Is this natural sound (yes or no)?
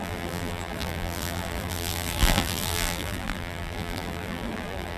no